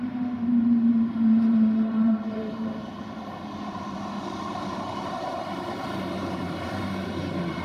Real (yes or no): no